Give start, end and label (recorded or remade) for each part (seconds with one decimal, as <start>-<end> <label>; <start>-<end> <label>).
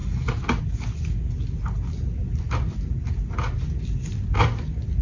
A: 0.0-5.0 recorded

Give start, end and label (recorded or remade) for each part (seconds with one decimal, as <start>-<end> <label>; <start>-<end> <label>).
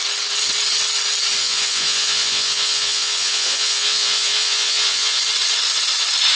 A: 0.0-1.4 recorded; 1.4-5.2 remade; 5.2-6.4 recorded